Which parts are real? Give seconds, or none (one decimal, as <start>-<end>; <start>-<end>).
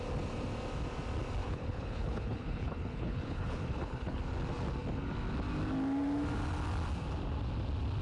0.0-1.4; 4.2-8.0